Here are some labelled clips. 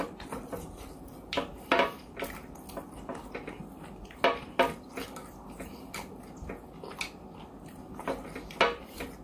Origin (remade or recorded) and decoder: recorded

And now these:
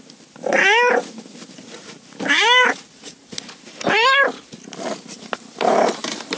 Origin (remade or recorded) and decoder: recorded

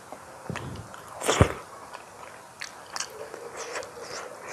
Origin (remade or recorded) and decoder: recorded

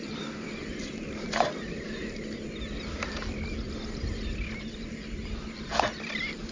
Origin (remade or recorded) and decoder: recorded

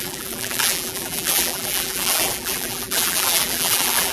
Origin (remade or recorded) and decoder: remade, vocoder, BigVGAN v2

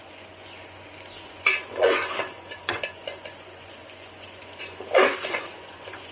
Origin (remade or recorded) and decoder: remade, vocoder, Vocos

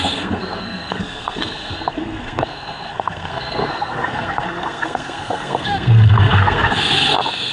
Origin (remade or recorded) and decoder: remade, codec, SNAC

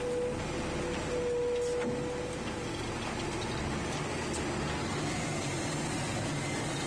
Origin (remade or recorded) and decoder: recorded